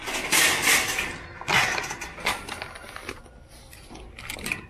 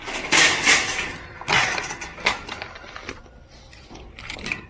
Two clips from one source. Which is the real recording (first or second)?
first